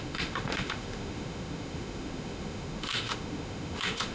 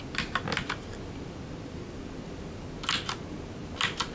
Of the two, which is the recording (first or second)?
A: second